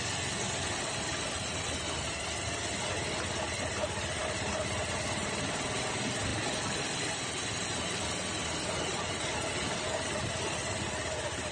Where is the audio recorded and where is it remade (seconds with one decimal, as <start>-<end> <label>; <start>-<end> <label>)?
0.0-11.5 recorded